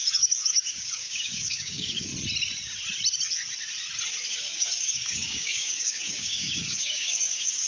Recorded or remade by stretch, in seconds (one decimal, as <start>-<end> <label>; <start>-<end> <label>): 0.0-2.1 remade; 2.1-4.3 recorded; 4.3-7.7 remade